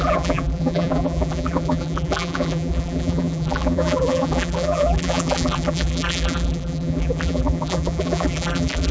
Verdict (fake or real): fake